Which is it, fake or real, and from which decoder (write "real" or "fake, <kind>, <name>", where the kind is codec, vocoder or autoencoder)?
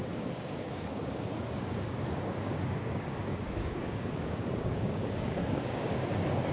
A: fake, codec, DAC